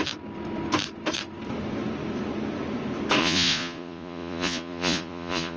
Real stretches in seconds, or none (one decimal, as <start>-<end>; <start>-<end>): 0.0-3.2